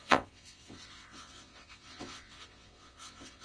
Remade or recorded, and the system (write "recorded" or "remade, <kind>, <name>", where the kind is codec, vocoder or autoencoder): remade, vocoder, WaveNeXt